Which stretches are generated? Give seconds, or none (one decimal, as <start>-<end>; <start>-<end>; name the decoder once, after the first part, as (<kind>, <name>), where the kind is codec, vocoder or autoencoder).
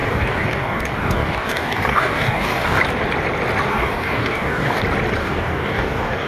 0.0-2.8 (codec, DAC); 3.7-4.8; 5.2-6.3